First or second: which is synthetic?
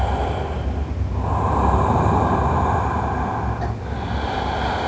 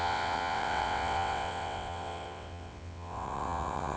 second